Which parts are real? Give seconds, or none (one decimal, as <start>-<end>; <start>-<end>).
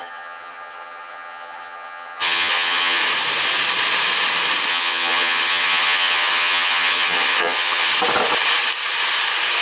3.0-4.7; 7.9-9.6